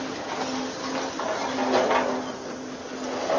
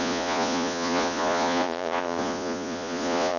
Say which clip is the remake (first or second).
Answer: second